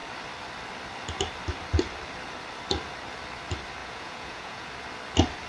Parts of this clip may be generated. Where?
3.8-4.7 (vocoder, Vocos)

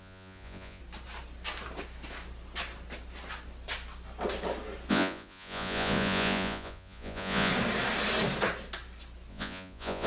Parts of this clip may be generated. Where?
0.0-0.8 (vocoder, Vocos); 4.9-7.5; 9.3-10.1

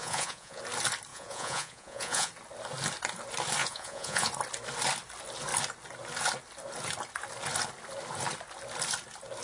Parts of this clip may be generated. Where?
0.0-0.6 (vocoder, Vocos); 1.1-2.3; 3.6-4.3

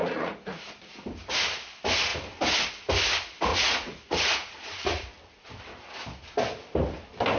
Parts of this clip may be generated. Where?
0.0-0.6 (vocoder, Vocos); 3.5-5.5

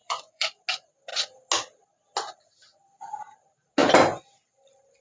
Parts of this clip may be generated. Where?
0.0-0.5 (vocoder, Vocos)

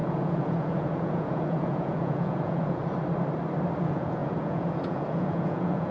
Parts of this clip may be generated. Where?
0.0-2.8 (vocoder, Vocos); 3.8-5.9

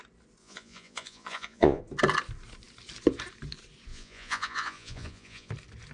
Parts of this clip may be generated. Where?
0.4-1.8 (vocoder, Vocos); 3.9-5.5

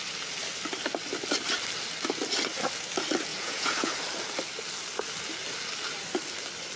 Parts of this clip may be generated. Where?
3.3-3.9 (vocoder, Vocos)